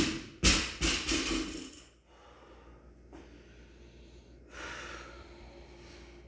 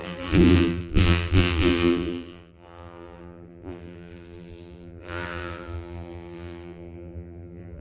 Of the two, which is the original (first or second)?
first